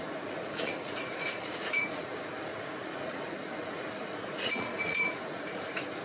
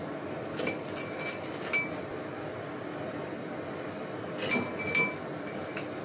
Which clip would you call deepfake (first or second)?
first